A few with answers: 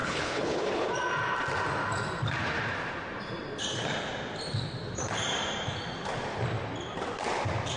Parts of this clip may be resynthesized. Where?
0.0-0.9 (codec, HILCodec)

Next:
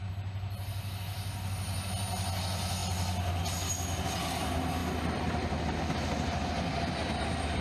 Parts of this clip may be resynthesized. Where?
4.8-5.5 (vocoder, BigVGAN v2)

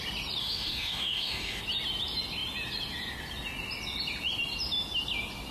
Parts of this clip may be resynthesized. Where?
0.4-1.6 (codec, DAC)

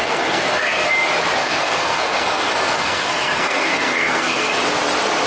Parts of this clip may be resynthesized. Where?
0.0-0.9 (codec, SNAC); 1.4-4.6

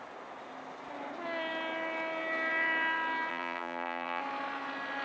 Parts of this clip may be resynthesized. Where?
3.3-4.2 (vocoder, BigVGAN v2)

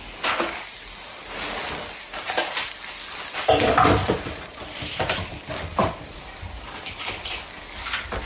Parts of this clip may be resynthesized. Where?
4.0-5.3 (vocoder, BigVGAN v2); 5.7-7.3